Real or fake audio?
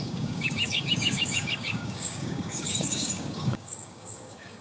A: fake